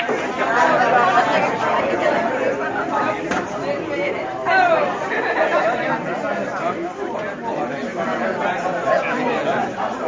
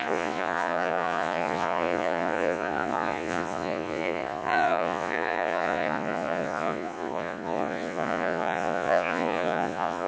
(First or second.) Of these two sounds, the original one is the first